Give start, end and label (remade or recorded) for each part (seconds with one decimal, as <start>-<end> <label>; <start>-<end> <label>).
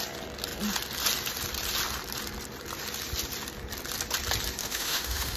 0.0-4.6 recorded; 4.6-5.4 remade